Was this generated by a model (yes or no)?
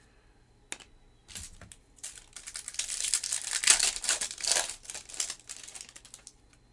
no